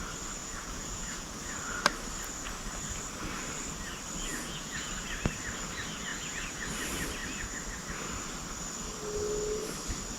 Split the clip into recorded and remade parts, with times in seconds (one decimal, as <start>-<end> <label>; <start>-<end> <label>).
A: 0.0-0.4 recorded; 0.4-1.4 remade; 1.4-4.3 recorded; 4.3-4.9 remade; 4.9-6.1 recorded; 6.1-6.7 remade; 6.7-10.2 recorded